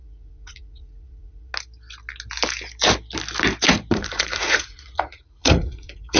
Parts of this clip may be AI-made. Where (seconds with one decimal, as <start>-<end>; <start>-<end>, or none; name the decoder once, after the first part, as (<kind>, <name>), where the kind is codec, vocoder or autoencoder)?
0.0-1.5 (vocoder, Vocos); 3.9-6.2